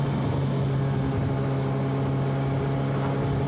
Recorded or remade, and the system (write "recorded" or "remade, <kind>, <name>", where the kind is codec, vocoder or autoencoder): recorded